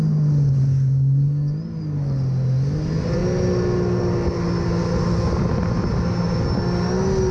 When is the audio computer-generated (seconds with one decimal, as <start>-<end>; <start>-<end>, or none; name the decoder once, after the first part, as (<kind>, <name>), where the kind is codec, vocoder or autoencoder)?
none